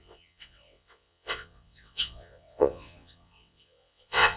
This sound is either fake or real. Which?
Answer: fake